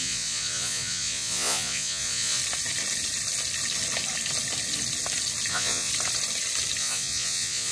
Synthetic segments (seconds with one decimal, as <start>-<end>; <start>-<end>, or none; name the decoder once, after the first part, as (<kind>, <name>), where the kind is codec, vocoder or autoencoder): 0.0-2.4 (vocoder, Vocos); 5.5-5.9; 6.8-7.7